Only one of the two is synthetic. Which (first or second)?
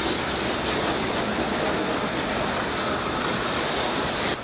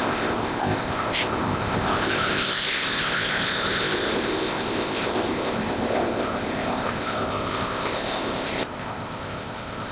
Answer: second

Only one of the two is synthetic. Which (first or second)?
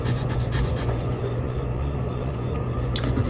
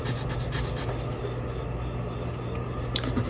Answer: first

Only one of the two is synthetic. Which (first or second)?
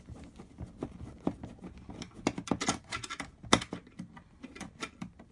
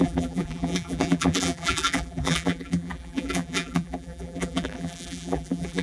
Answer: second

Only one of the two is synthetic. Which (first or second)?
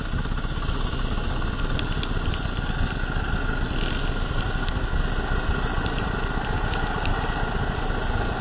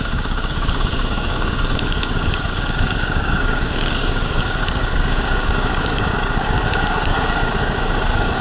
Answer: second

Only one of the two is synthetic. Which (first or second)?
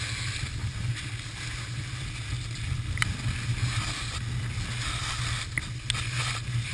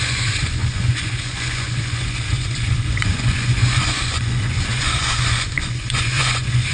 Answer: second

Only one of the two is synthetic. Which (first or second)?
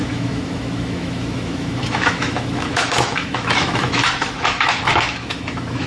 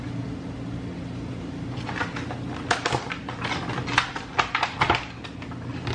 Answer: first